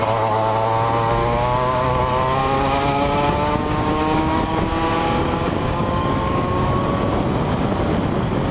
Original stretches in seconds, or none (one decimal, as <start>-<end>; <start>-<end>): 0.0-1.2; 2.0-2.4; 6.8-8.5